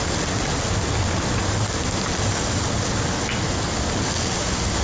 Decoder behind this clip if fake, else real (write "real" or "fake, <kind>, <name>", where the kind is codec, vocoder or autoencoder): real